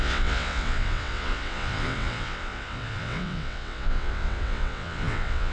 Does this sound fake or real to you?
fake